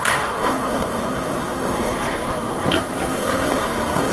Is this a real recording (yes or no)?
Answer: no